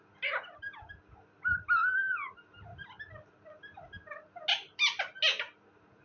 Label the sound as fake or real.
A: real